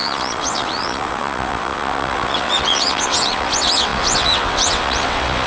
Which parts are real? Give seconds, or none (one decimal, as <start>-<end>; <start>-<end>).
none